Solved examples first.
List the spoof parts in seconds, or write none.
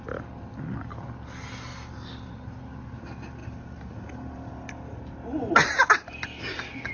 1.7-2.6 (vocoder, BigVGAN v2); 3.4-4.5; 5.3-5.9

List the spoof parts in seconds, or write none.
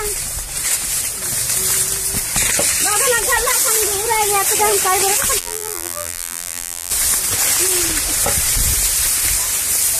5.4-6.9 (vocoder, BigVGAN v2)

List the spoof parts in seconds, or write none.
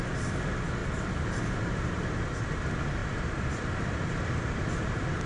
0.8-2.6 (vocoder, BigVGAN v2); 3.0-5.3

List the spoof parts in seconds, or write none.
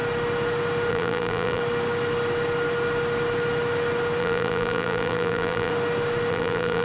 0.9-1.6 (vocoder, BigVGAN v2); 4.2-5.7; 6.3-6.8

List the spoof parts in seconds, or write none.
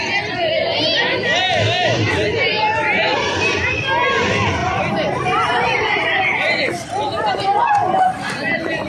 2.5-3.5 (vocoder, BigVGAN v2); 4.6-6.7